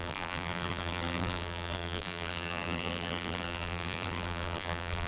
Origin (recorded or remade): remade